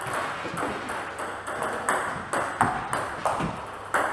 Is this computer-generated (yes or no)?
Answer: no